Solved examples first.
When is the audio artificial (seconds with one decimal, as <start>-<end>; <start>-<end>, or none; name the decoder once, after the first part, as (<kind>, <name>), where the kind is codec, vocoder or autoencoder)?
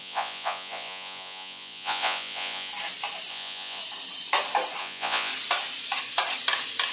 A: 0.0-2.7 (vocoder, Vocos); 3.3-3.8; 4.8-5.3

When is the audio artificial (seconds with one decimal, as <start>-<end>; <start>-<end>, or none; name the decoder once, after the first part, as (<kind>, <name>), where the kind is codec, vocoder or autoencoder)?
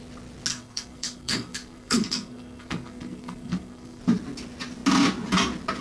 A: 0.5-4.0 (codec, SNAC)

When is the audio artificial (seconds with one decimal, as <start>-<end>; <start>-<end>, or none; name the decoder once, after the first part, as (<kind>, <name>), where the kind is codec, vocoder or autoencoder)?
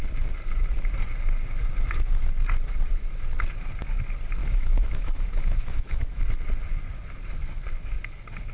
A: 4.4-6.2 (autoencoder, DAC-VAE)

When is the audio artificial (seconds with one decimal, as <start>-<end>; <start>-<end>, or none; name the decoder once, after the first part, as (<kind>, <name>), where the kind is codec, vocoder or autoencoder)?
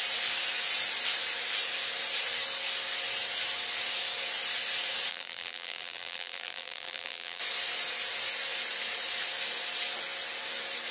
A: 5.1-7.4 (vocoder, BigVGAN v2)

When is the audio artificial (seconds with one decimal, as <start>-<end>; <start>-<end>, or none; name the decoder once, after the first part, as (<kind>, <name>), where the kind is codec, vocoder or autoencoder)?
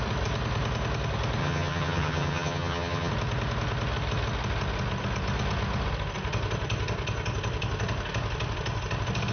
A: 1.4-3.1 (vocoder, HiFi-GAN)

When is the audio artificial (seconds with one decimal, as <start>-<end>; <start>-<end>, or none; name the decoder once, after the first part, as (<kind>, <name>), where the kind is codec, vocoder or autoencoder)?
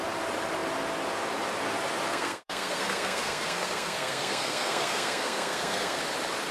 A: 2.1-6.0 (codec, SNAC)